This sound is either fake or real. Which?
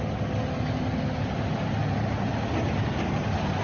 real